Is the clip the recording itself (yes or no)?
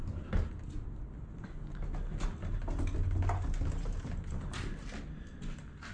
yes